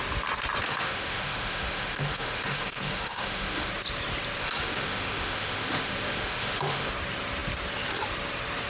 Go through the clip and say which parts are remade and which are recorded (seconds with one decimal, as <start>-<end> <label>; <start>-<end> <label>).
0.0-0.6 recorded; 0.6-3.7 remade; 3.7-4.4 recorded; 4.4-6.9 remade; 6.9-8.7 recorded